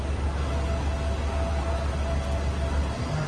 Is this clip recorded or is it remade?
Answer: recorded